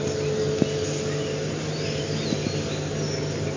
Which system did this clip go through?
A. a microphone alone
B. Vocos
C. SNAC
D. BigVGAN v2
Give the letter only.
A